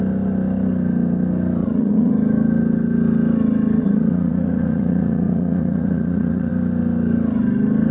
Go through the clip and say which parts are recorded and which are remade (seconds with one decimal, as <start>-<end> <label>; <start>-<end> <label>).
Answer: 0.0-1.6 recorded; 1.6-2.1 remade; 2.1-3.8 recorded; 3.8-6.5 remade; 6.5-7.9 recorded